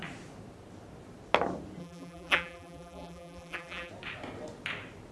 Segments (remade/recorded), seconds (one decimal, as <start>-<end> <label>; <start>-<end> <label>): 0.0-1.8 recorded; 1.8-3.9 remade; 3.9-5.1 recorded